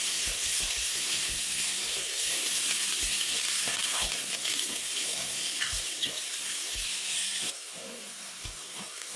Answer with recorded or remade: remade